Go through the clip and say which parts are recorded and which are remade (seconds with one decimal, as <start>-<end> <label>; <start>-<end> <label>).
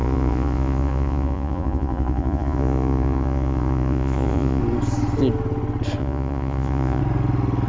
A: 0.0-4.6 remade; 4.6-6.0 recorded; 6.0-7.0 remade; 7.0-7.7 recorded